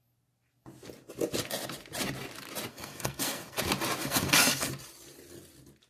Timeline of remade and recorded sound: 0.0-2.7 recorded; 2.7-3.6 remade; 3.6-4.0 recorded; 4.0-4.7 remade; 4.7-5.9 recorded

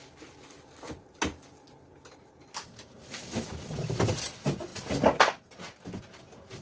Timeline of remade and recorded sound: 0.0-6.6 recorded

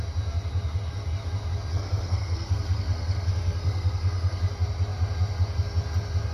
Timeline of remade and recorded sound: 0.0-1.7 recorded; 1.7-4.5 remade; 4.5-6.3 recorded

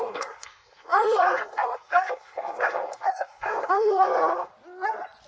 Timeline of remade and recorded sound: 0.0-4.5 remade; 4.5-5.3 recorded

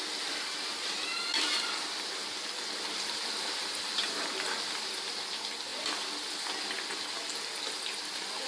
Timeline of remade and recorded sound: 0.0-8.5 recorded